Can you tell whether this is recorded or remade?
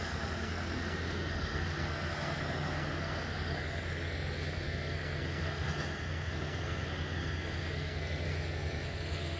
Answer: remade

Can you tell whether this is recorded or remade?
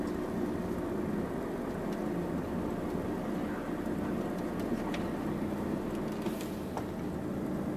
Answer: recorded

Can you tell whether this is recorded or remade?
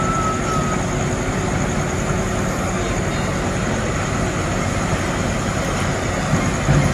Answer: recorded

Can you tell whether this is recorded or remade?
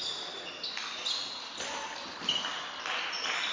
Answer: recorded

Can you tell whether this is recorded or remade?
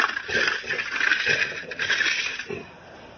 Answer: recorded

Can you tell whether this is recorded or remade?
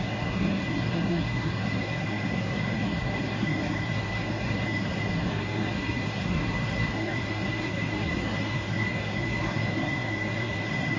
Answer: remade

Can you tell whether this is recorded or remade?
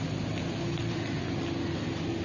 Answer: recorded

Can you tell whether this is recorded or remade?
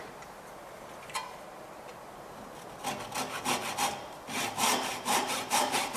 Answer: recorded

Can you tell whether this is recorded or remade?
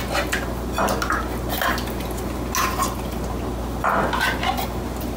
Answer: recorded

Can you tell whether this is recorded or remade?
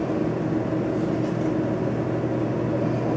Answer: recorded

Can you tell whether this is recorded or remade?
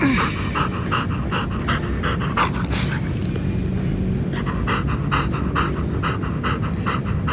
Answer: recorded